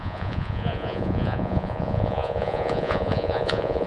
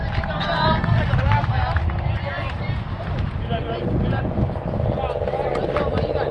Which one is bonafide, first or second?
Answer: second